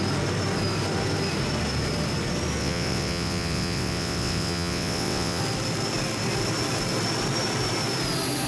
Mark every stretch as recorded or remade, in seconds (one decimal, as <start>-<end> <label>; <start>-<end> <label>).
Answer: 0.0-2.6 recorded; 2.6-5.4 remade; 5.4-8.5 recorded